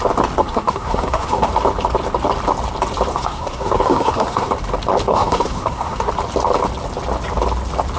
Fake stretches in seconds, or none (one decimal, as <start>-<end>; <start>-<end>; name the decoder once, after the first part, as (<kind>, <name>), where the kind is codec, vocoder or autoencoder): 0.4-1.5 (codec, SNAC); 3.1-4.5; 5.1-6.1